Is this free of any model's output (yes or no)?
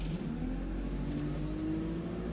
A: yes